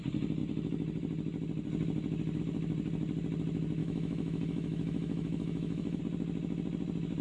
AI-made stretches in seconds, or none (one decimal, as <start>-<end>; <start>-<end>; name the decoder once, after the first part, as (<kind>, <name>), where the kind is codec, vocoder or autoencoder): 3.8-6.0 (autoencoder, DAC-VAE)